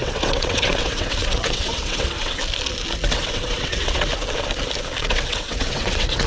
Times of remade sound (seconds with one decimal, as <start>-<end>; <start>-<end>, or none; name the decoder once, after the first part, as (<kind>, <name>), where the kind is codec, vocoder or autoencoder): 0.0-2.4 (vocoder, WaveNeXt); 3.1-4.1; 5.0-6.3